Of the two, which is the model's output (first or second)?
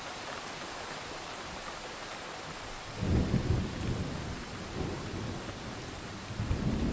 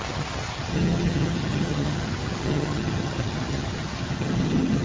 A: second